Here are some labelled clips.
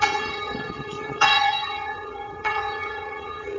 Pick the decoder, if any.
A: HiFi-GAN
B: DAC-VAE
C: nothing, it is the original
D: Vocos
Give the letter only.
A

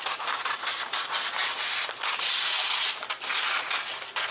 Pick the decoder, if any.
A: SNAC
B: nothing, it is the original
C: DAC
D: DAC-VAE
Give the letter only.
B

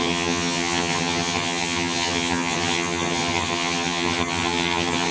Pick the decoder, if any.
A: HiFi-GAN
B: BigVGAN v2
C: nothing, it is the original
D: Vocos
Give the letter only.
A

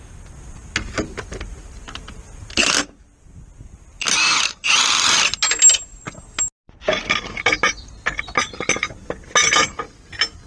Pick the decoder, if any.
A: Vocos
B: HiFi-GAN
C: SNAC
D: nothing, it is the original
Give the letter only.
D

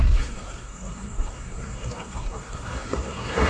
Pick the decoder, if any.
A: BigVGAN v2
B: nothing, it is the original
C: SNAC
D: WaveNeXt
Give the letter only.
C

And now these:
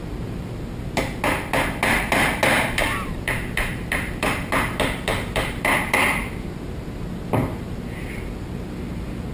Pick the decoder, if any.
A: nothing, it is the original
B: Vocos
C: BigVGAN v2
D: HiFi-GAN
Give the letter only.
A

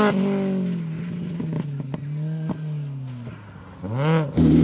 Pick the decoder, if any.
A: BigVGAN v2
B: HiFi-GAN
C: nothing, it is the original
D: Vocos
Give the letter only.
C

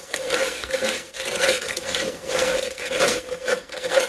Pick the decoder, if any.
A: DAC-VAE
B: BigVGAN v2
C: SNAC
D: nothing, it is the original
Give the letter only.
C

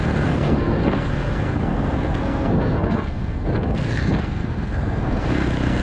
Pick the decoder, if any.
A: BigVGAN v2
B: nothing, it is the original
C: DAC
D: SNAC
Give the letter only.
D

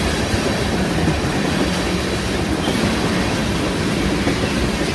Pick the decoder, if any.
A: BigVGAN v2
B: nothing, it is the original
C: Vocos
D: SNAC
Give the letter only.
B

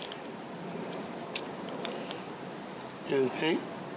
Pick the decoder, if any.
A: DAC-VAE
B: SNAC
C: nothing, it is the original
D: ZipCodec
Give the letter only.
C